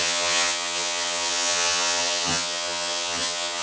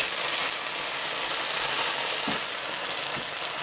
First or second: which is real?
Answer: second